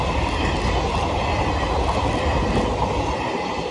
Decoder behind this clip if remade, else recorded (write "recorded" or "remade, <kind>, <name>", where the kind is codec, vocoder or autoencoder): recorded